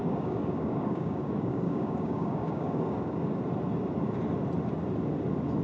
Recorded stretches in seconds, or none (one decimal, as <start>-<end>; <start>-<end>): 3.4-5.6